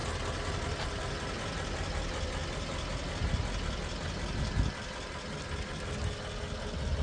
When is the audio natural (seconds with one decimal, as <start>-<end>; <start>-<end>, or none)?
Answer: 0.0-7.0